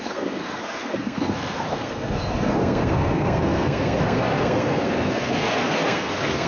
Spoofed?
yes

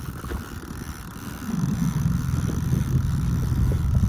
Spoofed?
no